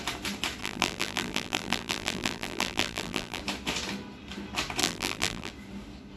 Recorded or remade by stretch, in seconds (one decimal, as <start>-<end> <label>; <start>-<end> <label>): 0.0-0.6 recorded; 0.6-3.4 remade; 3.4-4.8 recorded; 4.8-5.5 remade; 5.5-6.2 recorded

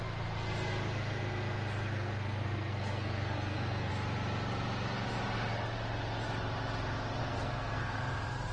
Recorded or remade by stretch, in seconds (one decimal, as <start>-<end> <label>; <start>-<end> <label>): 0.0-1.9 recorded; 1.9-3.9 remade; 3.9-7.2 recorded; 7.2-8.0 remade; 8.0-8.5 recorded

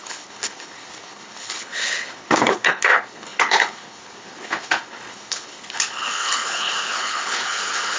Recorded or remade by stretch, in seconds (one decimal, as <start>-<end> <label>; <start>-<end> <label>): 0.0-8.0 remade